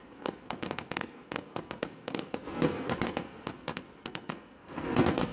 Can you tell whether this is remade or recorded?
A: remade